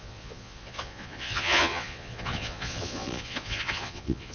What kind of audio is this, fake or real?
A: fake